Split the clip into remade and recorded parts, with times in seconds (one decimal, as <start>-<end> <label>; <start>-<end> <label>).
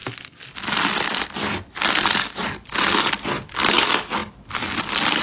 0.0-5.2 recorded